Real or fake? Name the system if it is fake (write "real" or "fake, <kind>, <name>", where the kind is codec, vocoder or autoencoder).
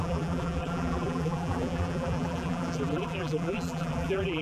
fake, vocoder, BigVGAN v2